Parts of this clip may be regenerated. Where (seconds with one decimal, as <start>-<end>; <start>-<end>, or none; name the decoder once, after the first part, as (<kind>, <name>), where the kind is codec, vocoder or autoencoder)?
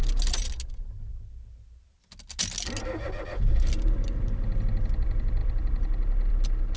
none